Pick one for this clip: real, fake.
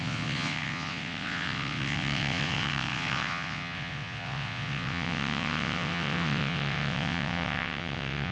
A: fake